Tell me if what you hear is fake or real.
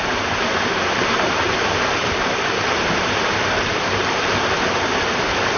fake